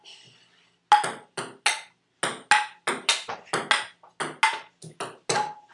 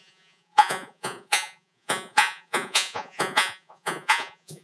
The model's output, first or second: second